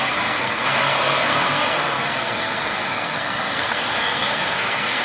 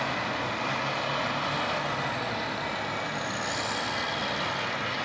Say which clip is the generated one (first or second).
first